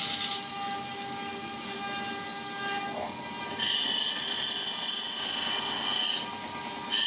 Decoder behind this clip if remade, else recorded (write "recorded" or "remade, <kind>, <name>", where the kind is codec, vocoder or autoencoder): recorded